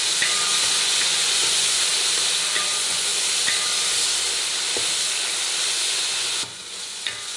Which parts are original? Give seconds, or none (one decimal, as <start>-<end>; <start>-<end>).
1.9-2.6; 3.1-5.7